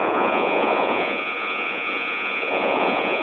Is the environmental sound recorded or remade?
remade